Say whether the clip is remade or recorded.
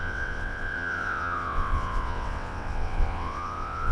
remade